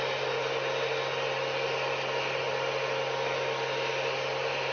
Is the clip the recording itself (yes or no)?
yes